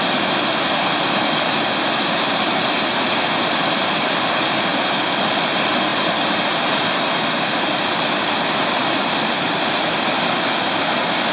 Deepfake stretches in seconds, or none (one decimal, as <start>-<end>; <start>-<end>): none